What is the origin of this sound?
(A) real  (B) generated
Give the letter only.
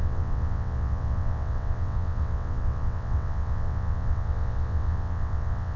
B